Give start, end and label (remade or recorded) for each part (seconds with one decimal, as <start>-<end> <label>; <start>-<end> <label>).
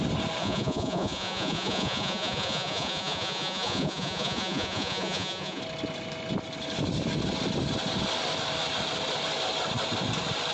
0.0-0.4 recorded; 0.4-5.6 remade; 5.6-10.5 recorded